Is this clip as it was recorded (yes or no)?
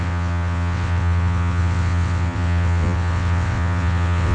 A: no